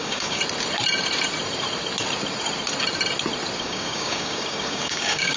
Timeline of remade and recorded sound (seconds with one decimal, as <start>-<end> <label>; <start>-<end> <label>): 0.0-0.4 remade; 0.4-3.6 recorded; 3.6-5.4 remade

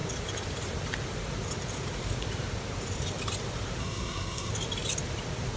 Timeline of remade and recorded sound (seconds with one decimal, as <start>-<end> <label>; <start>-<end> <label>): 0.0-3.8 recorded; 3.8-4.5 remade; 4.5-5.6 recorded

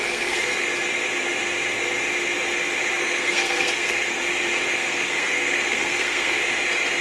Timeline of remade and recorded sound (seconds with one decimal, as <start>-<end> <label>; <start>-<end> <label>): 0.0-0.7 remade; 0.7-3.0 recorded; 3.0-4.2 remade; 4.2-4.7 recorded; 4.7-6.4 remade; 6.4-7.0 recorded

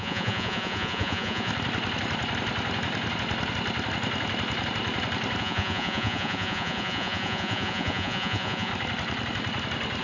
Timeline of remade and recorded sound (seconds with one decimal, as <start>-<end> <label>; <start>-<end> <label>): 0.0-1.5 remade; 1.5-5.4 recorded; 5.4-8.7 remade; 8.7-10.0 recorded

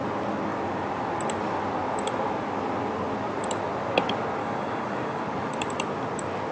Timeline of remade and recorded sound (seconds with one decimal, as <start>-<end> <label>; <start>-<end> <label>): 0.0-4.4 recorded; 4.4-5.2 remade; 5.2-6.5 recorded

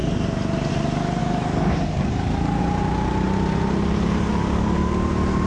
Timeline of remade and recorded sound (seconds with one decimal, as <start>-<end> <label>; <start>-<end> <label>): 0.0-1.2 recorded; 1.2-2.6 remade; 2.6-4.3 recorded; 4.3-4.9 remade; 4.9-5.5 recorded